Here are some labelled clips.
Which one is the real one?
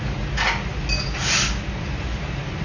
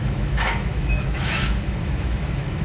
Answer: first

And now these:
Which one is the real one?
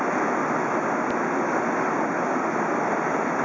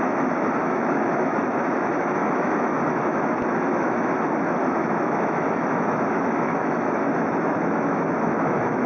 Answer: first